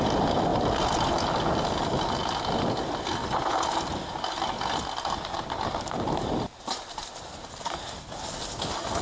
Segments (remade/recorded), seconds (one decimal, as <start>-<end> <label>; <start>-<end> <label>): 0.0-9.0 recorded